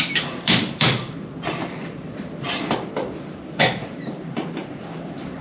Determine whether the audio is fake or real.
fake